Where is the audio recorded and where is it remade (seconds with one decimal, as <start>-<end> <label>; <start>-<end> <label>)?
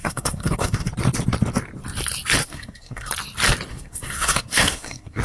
0.0-0.9 remade; 0.9-2.4 recorded; 2.4-3.1 remade; 3.1-3.7 recorded; 3.7-5.2 remade